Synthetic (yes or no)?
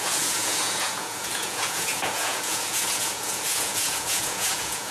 yes